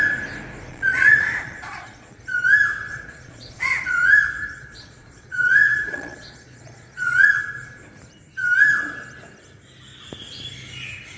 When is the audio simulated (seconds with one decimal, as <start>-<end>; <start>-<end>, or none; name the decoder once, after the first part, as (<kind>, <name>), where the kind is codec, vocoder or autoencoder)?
0.7-2.2 (vocoder, Vocos); 2.9-7.4